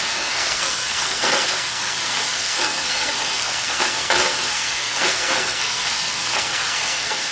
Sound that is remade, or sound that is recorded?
remade